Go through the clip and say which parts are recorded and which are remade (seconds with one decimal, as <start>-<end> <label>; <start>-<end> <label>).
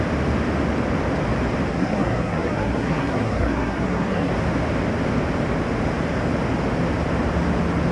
0.0-1.7 recorded; 1.7-4.3 remade; 4.3-7.9 recorded